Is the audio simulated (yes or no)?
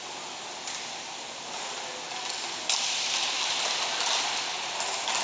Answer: no